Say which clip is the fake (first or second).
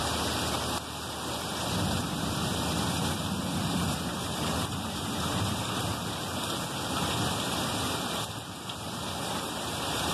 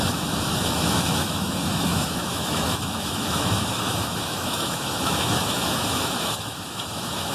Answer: second